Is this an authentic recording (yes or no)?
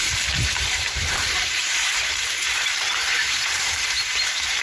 no